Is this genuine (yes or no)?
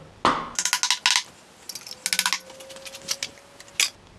yes